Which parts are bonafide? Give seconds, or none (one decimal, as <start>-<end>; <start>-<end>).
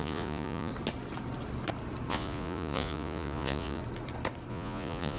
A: 0.7-2.1; 3.8-4.5